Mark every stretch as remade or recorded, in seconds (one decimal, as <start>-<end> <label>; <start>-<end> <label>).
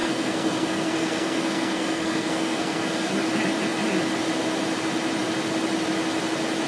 0.0-3.1 remade; 3.1-6.7 recorded